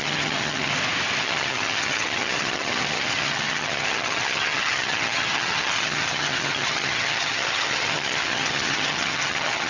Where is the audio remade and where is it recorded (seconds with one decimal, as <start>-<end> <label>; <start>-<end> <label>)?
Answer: 0.0-0.7 remade; 0.7-1.2 recorded; 1.2-9.7 remade